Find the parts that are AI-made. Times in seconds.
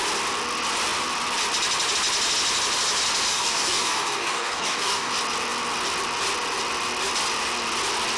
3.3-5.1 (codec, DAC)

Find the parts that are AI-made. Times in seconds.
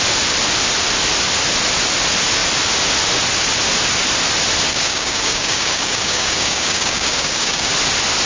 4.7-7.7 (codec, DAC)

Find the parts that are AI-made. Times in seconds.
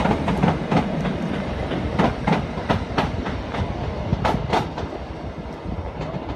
none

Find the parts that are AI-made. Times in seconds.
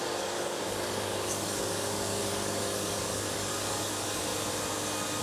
0.0-4.3 (codec, DAC)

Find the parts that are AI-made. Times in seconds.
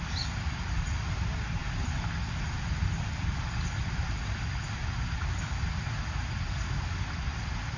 none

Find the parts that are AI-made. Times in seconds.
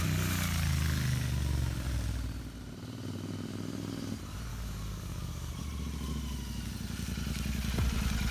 4.5-5.5 (codec, DAC)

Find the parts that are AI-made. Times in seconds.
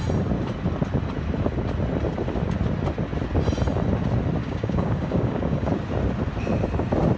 4.4-5.7 (codec, DAC)